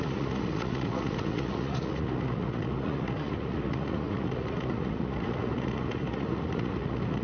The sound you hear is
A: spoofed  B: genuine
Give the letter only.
A